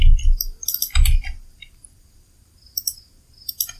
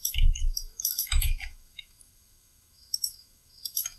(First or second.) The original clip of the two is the first